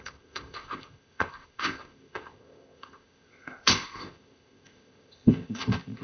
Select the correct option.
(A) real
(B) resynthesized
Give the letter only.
B